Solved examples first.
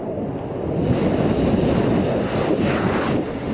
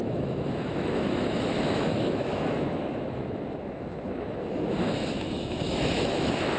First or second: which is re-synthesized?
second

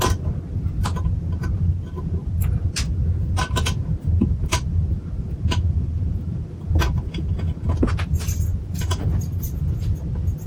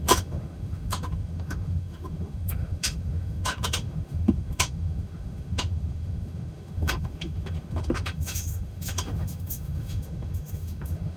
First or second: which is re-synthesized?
second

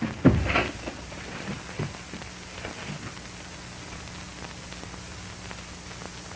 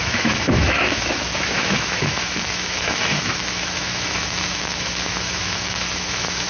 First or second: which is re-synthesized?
second